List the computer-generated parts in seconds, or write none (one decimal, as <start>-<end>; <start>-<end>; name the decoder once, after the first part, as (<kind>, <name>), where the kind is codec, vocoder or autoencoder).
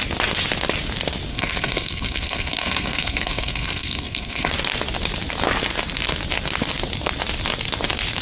1.3-4.5 (codec, SNAC)